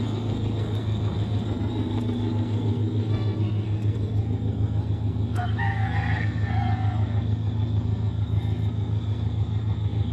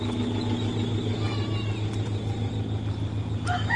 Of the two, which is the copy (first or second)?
first